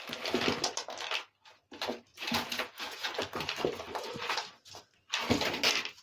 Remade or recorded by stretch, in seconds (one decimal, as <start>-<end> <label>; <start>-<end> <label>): 0.0-2.1 recorded; 2.1-3.1 remade; 3.1-6.0 recorded